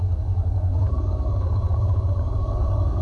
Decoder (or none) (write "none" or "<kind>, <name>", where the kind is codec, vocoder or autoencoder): codec, DAC